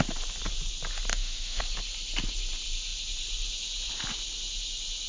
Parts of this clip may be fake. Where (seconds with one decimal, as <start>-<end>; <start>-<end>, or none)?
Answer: 1.1-1.6